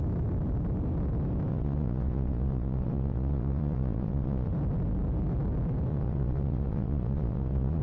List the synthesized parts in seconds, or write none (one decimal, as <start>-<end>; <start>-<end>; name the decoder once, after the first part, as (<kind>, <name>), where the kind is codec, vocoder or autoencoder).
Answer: 1.5-4.5 (vocoder, Vocos); 5.9-7.8